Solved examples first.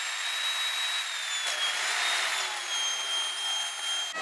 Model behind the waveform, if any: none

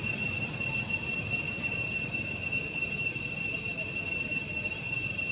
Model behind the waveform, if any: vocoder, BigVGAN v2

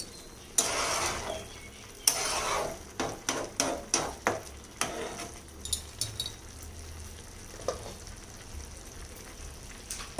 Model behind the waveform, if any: none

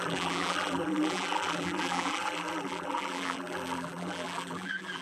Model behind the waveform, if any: vocoder, BigVGAN v2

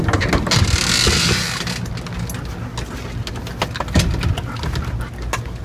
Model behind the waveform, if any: none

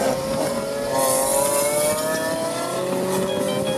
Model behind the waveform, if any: none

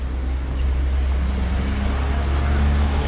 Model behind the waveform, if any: none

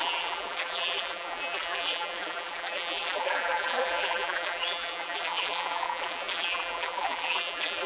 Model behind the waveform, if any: vocoder, BigVGAN v2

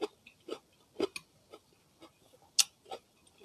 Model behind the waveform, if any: none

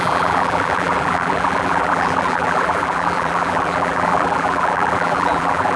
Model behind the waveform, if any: vocoder, BigVGAN v2